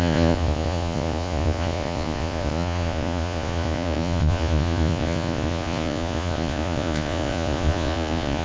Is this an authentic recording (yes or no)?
no